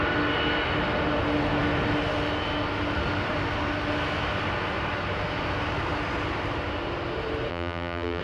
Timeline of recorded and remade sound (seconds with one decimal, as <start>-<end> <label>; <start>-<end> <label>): 0.0-7.5 recorded; 7.5-8.2 remade